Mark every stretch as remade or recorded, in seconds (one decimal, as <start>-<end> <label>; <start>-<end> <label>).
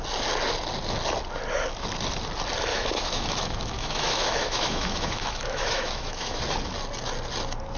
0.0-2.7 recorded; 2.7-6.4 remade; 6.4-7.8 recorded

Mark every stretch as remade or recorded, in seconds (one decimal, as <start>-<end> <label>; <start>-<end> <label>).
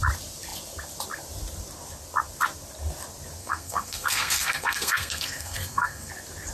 0.0-3.4 recorded; 3.4-6.1 remade; 6.1-6.5 recorded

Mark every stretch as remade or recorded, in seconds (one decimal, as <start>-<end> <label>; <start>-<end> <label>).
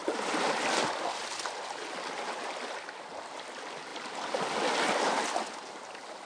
0.0-6.3 recorded